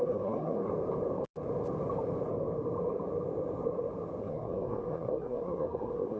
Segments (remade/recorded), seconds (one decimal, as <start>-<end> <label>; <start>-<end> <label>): 0.0-0.7 remade; 0.7-4.2 recorded; 4.2-6.2 remade